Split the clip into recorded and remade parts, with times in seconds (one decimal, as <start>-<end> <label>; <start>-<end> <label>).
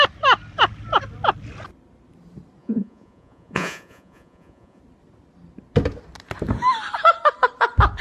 0.0-2.6 recorded; 2.6-4.8 remade; 4.8-8.0 recorded